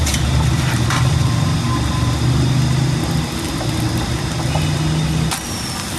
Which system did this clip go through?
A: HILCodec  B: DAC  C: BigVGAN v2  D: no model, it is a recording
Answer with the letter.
D